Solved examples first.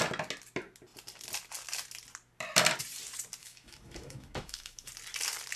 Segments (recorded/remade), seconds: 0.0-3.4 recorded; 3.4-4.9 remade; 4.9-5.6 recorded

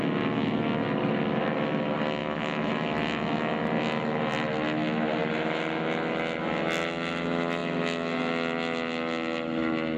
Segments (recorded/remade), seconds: 0.0-2.2 recorded; 2.2-2.7 remade; 2.7-10.0 recorded

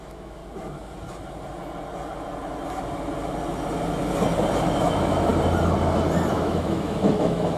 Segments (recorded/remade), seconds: 0.0-0.4 remade; 0.4-4.6 recorded; 4.6-5.3 remade; 5.3-6.3 recorded; 6.3-7.6 remade

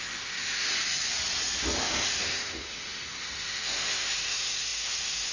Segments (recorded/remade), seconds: 0.0-0.7 remade; 0.7-1.8 recorded; 1.8-5.3 remade

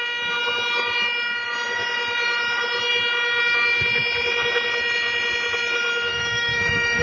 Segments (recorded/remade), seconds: 0.0-6.1 recorded; 6.1-7.0 remade

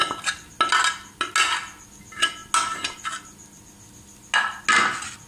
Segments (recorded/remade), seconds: 0.0-5.3 recorded

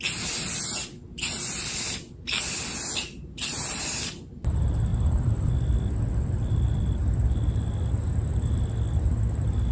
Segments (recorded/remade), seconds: 0.0-9.7 recorded

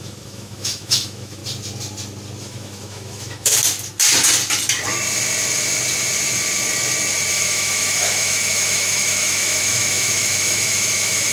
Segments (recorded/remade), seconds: 0.0-1.4 remade; 1.4-2.4 recorded; 2.4-3.5 remade; 3.5-7.3 recorded; 7.3-11.3 remade